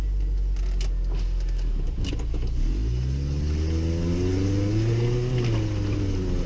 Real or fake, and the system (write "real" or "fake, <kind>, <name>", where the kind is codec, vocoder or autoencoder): real